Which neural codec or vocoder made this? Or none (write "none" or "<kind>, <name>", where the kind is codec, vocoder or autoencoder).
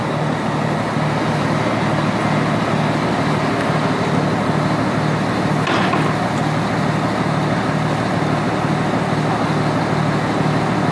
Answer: none